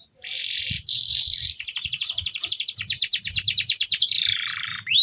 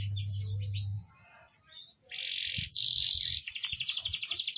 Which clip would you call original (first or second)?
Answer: second